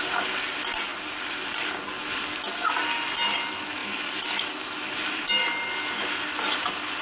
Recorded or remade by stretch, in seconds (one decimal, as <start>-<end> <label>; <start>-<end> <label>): 0.0-7.0 recorded

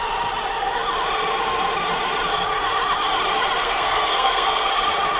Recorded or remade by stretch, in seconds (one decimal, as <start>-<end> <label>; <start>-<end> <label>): 0.0-3.6 recorded; 3.6-4.7 remade; 4.7-5.2 recorded

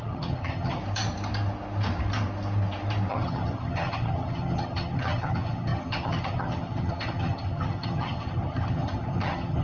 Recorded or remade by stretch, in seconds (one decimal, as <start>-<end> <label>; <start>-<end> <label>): 0.0-0.8 remade; 0.8-3.1 recorded; 3.1-9.6 remade

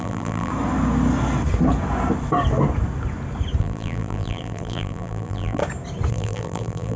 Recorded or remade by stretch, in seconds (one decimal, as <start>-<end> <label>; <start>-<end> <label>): 0.0-0.5 remade; 0.5-3.6 recorded; 3.6-5.6 remade; 5.6-6.1 recorded; 6.1-7.0 remade

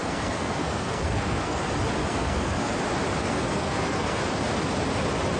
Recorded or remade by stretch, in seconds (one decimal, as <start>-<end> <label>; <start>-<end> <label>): 0.0-1.6 remade; 1.6-2.0 recorded; 2.0-2.7 remade; 2.7-3.2 recorded; 3.2-4.2 remade; 4.2-5.4 recorded